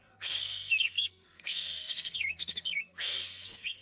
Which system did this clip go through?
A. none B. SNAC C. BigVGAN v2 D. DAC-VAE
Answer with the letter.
B